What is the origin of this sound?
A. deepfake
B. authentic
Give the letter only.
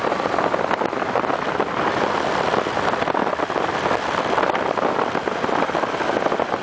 B